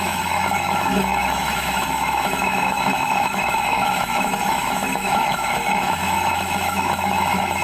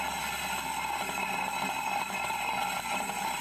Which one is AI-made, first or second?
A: first